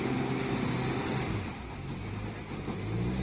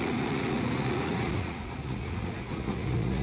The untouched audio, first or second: first